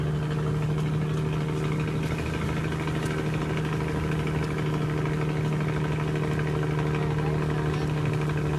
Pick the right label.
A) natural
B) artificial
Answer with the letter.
A